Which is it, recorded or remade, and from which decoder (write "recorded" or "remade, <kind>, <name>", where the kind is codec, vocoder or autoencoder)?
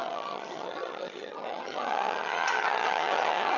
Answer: remade, vocoder, HiFi-GAN